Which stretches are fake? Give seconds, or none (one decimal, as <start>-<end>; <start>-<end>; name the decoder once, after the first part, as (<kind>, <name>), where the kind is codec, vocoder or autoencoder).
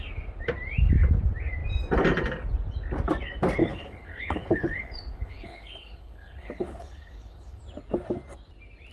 3.6-7.6 (codec, HILCodec)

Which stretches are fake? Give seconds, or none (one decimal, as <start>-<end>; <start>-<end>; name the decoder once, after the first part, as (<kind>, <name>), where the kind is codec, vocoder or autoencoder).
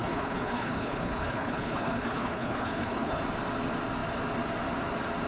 0.0-3.2 (codec, HILCodec)